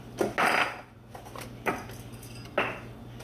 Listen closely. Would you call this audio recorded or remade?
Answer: recorded